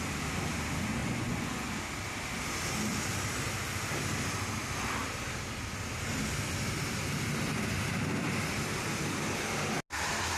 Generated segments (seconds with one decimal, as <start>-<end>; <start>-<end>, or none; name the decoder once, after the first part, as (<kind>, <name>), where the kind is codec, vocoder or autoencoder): 1.0-1.7 (vocoder, Vocos)